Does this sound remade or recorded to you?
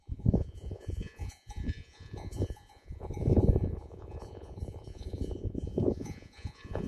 remade